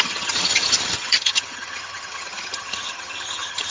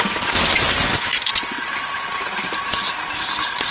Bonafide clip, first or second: second